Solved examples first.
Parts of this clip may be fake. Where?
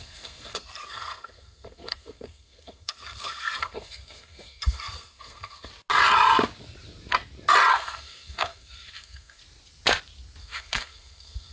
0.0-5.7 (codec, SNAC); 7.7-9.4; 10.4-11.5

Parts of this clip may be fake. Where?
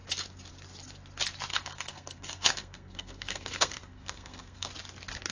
1.5-4.7 (codec, SNAC)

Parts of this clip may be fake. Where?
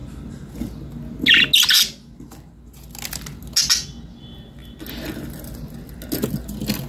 none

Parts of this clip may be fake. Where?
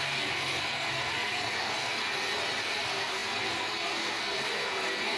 0.0-2.0 (codec, SNAC); 2.6-5.2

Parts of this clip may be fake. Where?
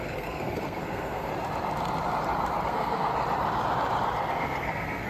0.0-1.3 (codec, SNAC); 2.7-3.1; 4.3-5.1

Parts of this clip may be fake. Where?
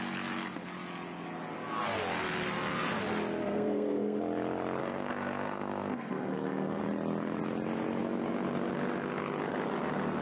3.4-4.2 (codec, SNAC); 4.8-6.8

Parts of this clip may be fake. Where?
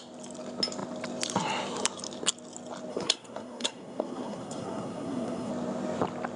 2.9-5.5 (codec, SNAC)